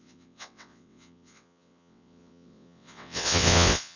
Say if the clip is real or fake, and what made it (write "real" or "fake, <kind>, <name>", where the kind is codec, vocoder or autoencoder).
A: fake, vocoder, WaveNeXt